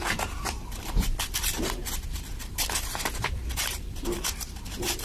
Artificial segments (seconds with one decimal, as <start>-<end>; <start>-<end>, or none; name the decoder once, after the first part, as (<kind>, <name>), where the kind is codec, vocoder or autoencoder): 0.0-1.8 (vocoder, BigVGAN v2); 3.2-5.0

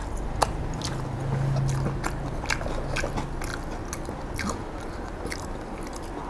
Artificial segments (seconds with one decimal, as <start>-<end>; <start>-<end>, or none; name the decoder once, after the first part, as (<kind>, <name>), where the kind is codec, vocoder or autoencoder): none

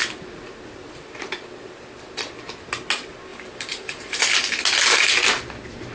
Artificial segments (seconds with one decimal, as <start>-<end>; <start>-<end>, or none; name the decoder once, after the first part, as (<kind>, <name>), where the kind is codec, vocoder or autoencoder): 3.3-4.2 (vocoder, BigVGAN v2)

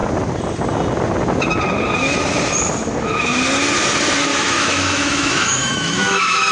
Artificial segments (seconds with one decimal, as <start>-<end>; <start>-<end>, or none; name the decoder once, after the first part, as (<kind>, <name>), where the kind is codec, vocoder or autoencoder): 4.3-6.5 (autoencoder, DAC-VAE)